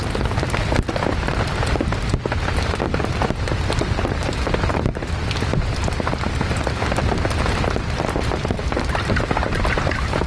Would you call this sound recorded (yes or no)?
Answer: yes